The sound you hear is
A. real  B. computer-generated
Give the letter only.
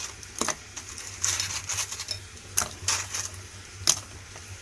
A